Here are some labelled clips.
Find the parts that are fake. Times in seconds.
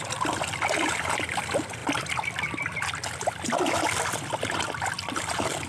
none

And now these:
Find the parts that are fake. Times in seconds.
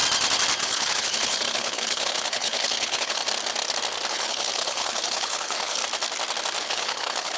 0.6-3.2; 4.1-5.8; 6.6-7.4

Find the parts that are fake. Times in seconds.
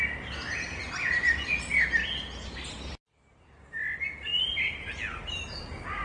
none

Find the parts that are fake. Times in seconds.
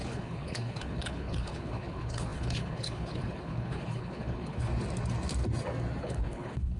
0.0-4.7; 6.0-6.8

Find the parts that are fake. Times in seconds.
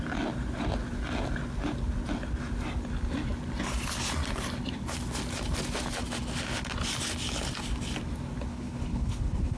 8.5-9.6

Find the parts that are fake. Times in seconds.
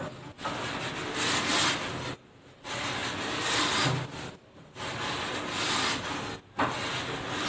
none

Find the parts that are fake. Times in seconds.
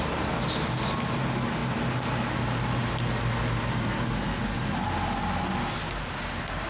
none